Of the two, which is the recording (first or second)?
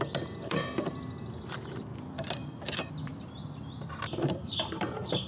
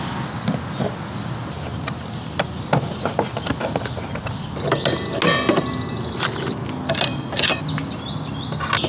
second